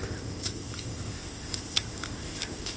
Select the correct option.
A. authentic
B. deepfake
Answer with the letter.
B